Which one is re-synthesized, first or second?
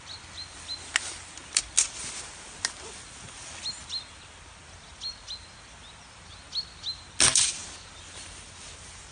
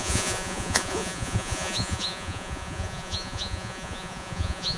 second